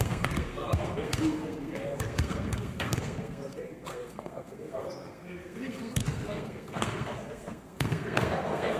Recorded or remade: remade